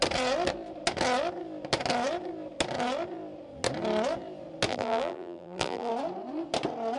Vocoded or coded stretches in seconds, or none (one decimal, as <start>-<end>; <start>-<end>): 4.7-5.9